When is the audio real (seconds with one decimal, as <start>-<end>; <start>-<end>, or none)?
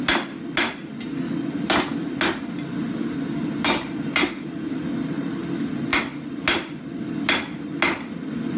0.0-8.6